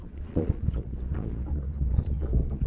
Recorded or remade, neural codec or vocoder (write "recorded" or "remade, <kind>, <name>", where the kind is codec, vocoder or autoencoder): remade, vocoder, Vocos